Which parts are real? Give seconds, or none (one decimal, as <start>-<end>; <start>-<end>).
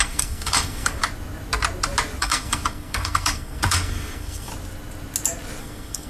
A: 1.0-2.2; 4.5-5.6